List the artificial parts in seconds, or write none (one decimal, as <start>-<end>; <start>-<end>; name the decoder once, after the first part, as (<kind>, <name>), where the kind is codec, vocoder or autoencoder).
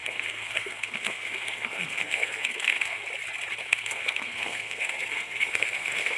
0.0-3.0 (codec, SNAC); 3.6-6.2